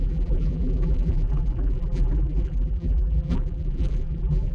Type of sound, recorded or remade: remade